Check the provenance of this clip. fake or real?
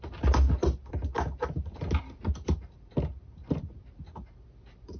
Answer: real